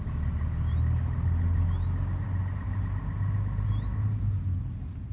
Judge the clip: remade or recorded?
recorded